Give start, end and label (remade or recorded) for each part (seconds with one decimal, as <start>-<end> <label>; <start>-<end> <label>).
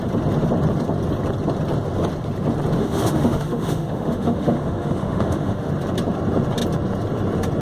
0.0-2.8 recorded; 2.8-5.7 remade; 5.7-7.6 recorded